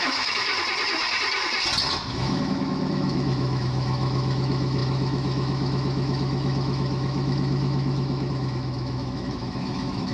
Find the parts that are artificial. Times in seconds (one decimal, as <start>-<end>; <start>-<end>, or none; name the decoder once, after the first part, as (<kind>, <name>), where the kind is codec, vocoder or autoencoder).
0.0-0.5 (autoencoder, DAC-VAE); 2.1-10.1

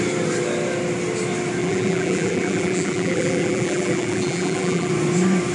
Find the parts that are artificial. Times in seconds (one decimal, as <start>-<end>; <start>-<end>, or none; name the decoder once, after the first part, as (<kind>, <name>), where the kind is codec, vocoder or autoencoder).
1.6-4.9 (vocoder, BigVGAN v2)

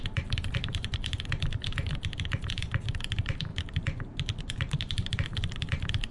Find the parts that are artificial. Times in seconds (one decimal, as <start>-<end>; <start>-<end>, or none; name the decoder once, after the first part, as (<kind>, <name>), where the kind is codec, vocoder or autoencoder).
0.0-3.5 (vocoder, BigVGAN v2); 4.4-6.1

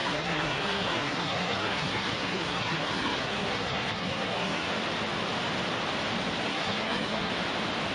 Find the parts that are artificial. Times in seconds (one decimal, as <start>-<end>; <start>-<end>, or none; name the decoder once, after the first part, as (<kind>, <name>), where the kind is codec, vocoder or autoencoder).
0.0-4.7 (codec, SNAC); 6.5-7.3

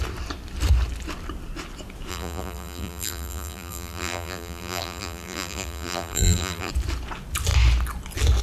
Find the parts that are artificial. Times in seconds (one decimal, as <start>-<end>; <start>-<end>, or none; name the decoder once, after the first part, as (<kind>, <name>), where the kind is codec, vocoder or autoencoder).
2.1-6.7 (vocoder, BigVGAN v2)

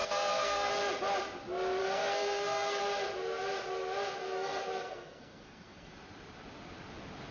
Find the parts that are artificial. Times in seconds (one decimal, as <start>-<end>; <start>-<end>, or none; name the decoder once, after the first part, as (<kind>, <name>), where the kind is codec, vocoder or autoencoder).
0.0-0.7 (codec, SNAC); 1.8-2.8; 4.2-5.9

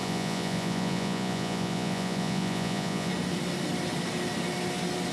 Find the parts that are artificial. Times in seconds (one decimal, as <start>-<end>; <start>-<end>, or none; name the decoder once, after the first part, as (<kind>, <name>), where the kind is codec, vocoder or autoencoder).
0.0-3.1 (vocoder, Vocos)